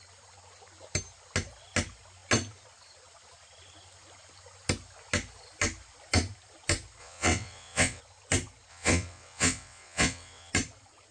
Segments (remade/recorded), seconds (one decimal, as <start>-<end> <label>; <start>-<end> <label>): 0.0-7.0 recorded; 7.0-8.0 remade; 8.0-8.7 recorded; 8.7-10.5 remade; 10.5-11.1 recorded